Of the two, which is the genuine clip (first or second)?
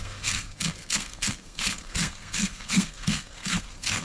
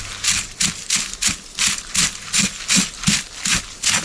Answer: second